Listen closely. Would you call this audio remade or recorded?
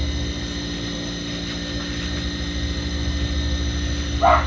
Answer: recorded